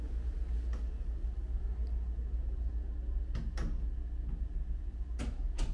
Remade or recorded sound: recorded